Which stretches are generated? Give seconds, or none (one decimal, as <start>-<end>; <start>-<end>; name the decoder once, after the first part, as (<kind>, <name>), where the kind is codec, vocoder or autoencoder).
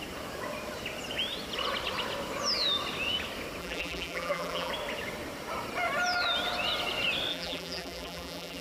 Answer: 3.6-4.7 (vocoder, BigVGAN v2); 7.3-8.6